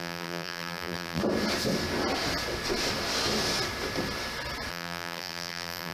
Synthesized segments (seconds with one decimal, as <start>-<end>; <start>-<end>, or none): 0.0-1.2; 4.7-5.9